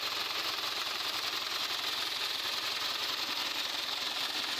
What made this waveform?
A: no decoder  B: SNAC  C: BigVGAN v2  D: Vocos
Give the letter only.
C